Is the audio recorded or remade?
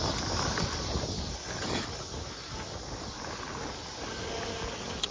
recorded